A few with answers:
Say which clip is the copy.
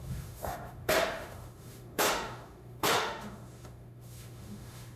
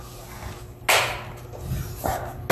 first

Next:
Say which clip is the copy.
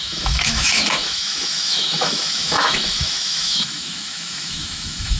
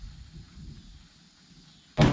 first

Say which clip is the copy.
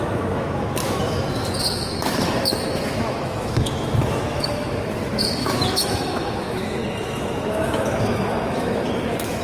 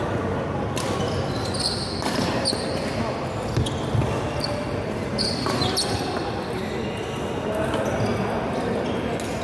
first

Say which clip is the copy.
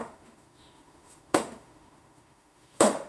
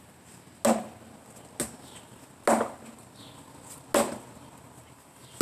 first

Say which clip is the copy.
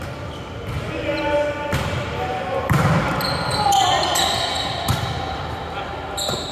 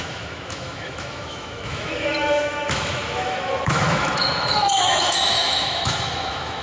second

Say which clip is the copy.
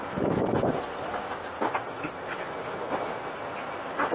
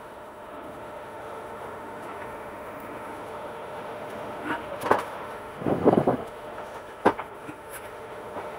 second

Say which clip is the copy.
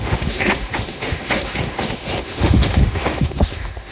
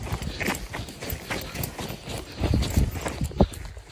first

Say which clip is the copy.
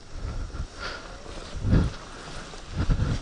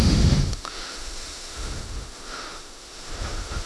second